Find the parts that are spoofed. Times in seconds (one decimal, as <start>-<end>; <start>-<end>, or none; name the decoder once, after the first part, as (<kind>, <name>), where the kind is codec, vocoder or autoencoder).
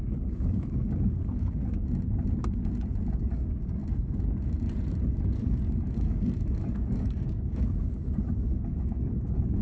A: 0.0-1.8 (codec, DAC); 3.2-3.8; 5.1-9.6